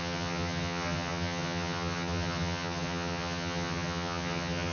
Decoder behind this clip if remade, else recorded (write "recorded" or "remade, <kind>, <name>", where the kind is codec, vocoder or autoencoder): remade, vocoder, HiFi-GAN